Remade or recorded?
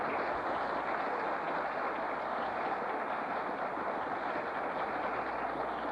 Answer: recorded